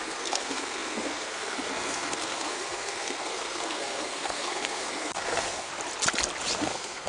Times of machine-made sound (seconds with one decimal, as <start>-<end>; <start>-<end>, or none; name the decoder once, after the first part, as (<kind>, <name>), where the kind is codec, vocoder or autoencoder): 0.0-5.7 (codec, SNAC); 6.6-7.1